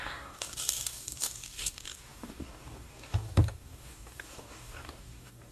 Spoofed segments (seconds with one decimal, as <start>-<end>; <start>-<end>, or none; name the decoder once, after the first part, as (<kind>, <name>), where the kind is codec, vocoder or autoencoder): 0.0-5.5 (codec, DAC)